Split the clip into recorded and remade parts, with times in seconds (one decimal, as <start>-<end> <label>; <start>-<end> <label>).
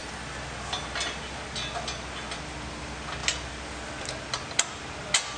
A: 0.0-5.4 recorded